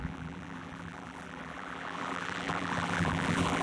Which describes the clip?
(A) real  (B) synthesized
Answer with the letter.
B